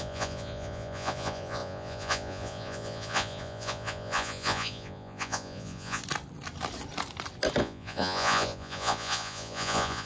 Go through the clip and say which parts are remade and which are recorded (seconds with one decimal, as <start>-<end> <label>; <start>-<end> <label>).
0.0-6.0 remade; 6.0-7.6 recorded; 7.6-10.1 remade